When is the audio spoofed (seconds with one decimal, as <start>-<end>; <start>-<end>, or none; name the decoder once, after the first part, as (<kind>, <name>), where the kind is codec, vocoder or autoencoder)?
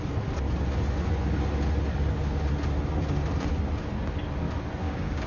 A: 4.8-5.3 (codec, DAC)